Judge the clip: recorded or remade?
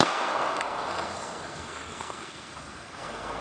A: remade